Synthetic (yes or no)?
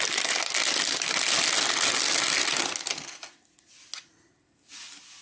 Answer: no